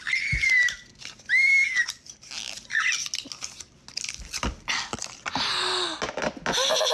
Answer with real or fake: real